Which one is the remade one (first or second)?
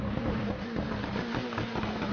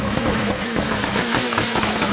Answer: second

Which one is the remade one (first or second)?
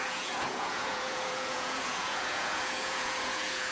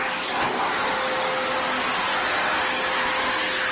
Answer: first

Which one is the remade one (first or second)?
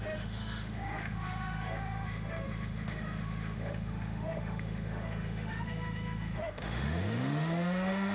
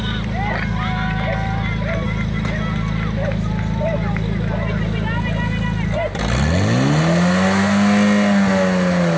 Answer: first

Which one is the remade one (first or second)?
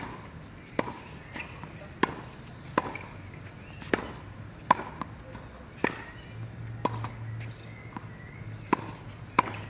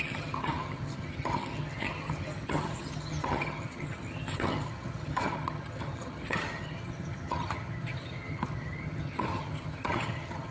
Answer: second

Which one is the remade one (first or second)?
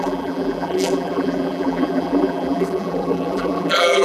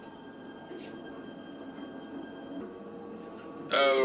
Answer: first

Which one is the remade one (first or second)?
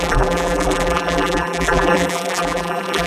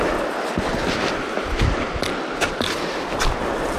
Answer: first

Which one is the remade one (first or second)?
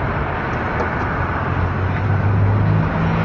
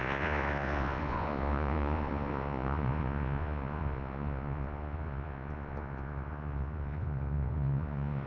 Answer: second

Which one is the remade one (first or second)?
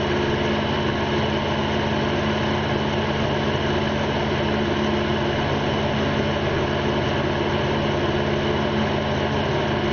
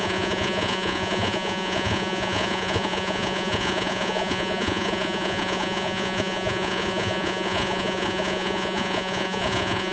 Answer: second